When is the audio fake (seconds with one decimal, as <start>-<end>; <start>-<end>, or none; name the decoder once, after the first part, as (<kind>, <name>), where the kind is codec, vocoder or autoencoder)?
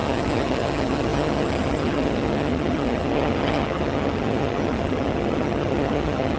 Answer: 0.0-6.4 (vocoder, HiFi-GAN)